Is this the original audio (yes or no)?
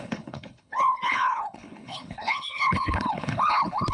no